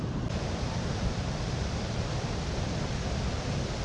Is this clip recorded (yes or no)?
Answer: yes